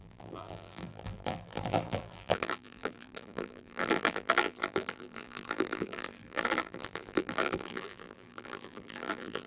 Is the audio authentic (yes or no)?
no